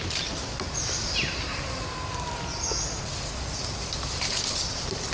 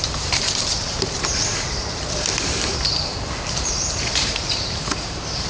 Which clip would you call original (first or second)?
first